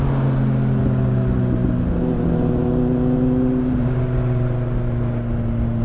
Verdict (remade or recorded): recorded